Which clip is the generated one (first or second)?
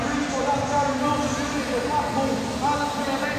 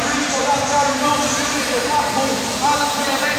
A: second